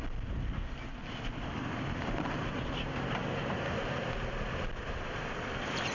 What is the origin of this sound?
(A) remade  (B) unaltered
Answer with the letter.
B